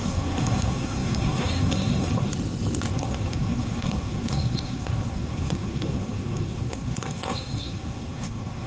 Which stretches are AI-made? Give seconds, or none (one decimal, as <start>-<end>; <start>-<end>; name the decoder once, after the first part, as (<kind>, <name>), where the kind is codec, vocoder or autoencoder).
0.0-2.3 (codec, SNAC); 2.9-8.7